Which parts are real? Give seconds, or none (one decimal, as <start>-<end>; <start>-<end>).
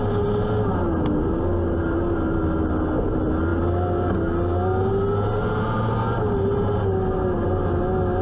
0.0-8.2